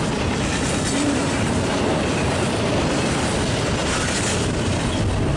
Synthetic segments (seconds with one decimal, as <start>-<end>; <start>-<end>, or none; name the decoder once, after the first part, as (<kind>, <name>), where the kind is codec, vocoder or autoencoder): 0.0-3.8 (vocoder, BigVGAN v2); 4.4-5.4